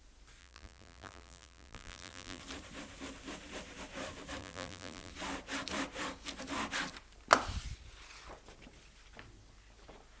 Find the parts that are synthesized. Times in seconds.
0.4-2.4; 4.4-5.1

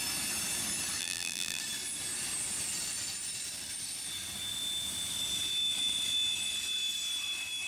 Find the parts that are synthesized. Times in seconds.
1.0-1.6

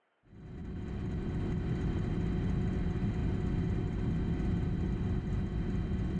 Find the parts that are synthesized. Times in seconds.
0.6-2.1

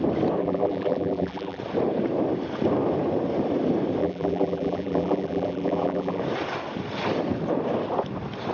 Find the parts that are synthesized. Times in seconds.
0.4-1.6; 4.0-6.2

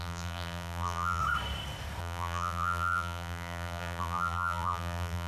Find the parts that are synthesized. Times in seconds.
0.0-1.2; 2.0-5.3

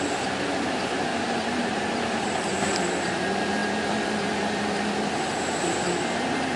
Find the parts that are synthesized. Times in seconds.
1.1-2.2